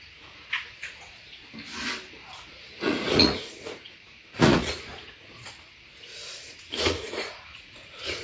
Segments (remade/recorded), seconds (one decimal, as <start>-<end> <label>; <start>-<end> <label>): 0.0-1.4 remade; 1.4-2.1 recorded; 2.1-8.2 remade